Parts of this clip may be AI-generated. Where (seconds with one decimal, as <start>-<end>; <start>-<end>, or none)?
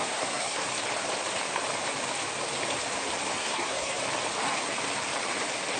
0.0-0.7; 3.4-4.0